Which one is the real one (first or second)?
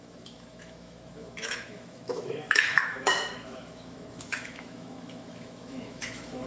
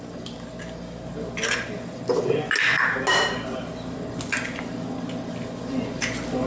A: second